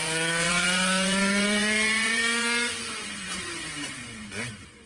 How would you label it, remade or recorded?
remade